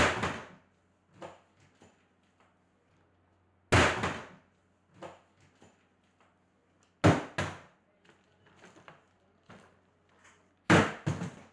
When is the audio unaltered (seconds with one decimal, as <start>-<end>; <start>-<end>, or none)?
0.0-11.5